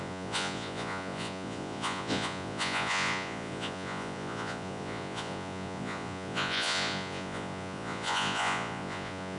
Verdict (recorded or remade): remade